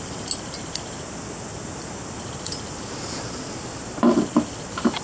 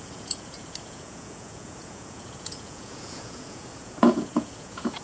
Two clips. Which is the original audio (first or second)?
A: first